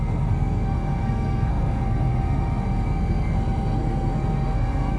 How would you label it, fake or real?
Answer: fake